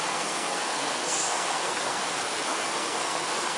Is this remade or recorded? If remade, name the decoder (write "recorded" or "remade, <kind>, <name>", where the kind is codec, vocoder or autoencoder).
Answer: remade, codec, SNAC